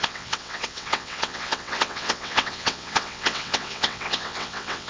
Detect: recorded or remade remade